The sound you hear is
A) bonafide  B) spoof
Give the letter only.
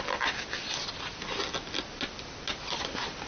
A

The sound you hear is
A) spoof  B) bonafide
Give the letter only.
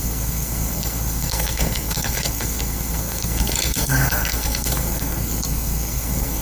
A